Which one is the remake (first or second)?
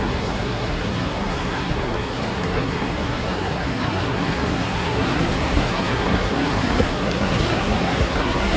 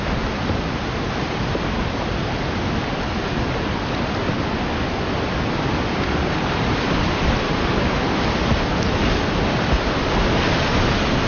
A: first